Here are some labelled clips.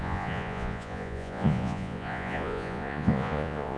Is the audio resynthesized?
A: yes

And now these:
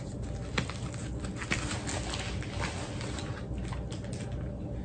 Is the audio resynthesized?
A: no